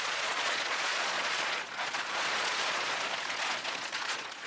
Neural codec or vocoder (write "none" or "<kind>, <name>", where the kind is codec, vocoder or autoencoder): vocoder, Vocos